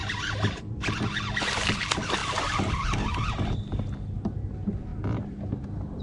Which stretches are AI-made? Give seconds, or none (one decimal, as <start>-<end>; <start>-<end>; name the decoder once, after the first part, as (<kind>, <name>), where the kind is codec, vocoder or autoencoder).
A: 0.0-1.1 (vocoder, BigVGAN v2); 2.2-3.6